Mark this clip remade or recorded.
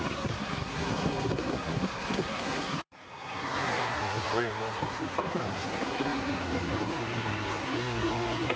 remade